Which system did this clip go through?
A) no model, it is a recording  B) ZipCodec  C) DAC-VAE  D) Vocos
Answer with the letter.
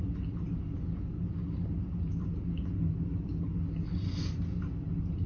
A